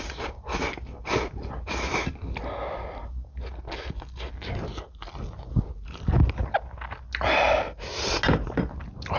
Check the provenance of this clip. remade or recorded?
recorded